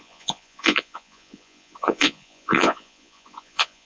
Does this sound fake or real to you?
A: fake